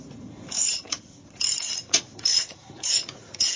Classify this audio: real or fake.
fake